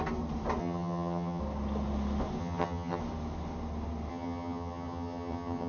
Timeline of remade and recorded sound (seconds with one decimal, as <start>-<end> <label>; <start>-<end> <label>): 0.0-0.6 recorded; 0.6-1.4 remade; 1.4-2.4 recorded; 2.4-3.0 remade; 3.0-4.1 recorded; 4.1-5.7 remade